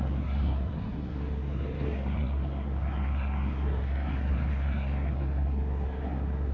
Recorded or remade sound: remade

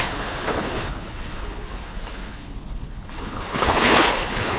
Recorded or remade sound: remade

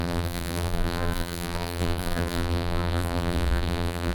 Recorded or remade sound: remade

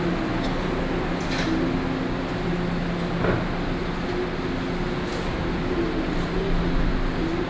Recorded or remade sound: recorded